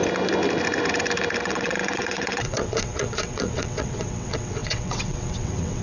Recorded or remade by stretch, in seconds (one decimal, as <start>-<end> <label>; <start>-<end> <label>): 0.0-1.4 recorded; 1.4-5.8 remade